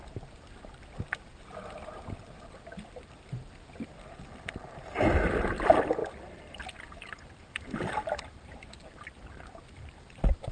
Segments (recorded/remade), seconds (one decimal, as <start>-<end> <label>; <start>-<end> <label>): 0.0-10.5 recorded